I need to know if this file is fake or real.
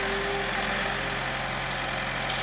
real